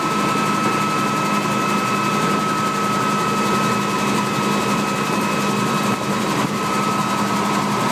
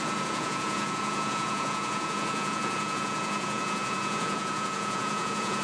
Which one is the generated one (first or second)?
second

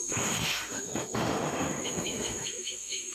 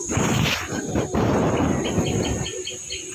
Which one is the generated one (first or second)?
first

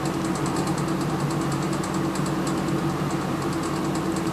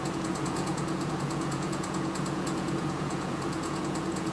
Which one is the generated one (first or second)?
second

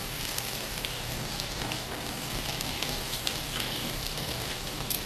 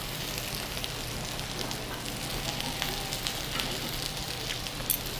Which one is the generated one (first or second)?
first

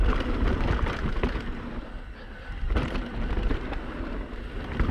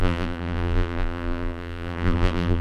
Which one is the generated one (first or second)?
second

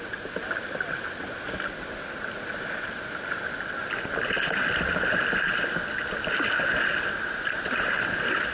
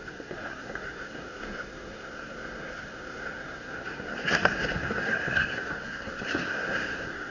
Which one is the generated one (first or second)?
second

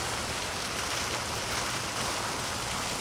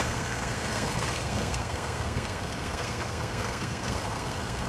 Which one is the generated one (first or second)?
second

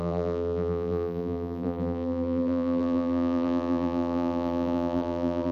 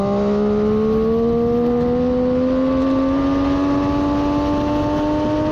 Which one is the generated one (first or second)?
first